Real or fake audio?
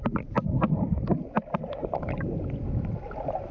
real